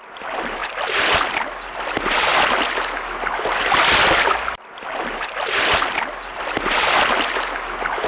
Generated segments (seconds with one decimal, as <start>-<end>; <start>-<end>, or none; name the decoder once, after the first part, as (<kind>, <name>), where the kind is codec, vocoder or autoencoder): none